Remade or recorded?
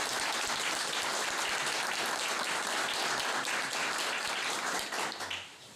recorded